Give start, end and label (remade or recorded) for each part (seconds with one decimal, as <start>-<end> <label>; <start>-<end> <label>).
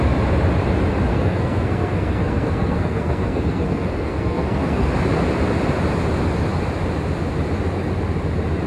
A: 0.0-1.1 recorded; 1.1-4.9 remade; 4.9-8.7 recorded